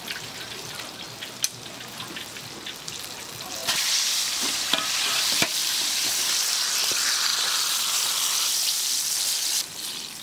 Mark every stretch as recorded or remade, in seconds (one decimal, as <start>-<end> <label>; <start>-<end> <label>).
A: 0.0-3.6 recorded; 3.6-5.0 remade; 5.0-5.6 recorded; 5.6-6.7 remade; 6.7-7.3 recorded; 7.3-9.1 remade; 9.1-10.2 recorded